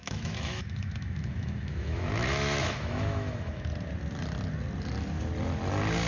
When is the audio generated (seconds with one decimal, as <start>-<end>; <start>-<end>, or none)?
0.0-3.7